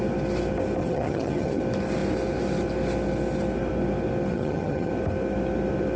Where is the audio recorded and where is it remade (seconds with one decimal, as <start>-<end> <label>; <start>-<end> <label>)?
0.0-0.8 recorded; 0.8-1.6 remade; 1.6-4.3 recorded; 4.3-4.9 remade; 4.9-6.0 recorded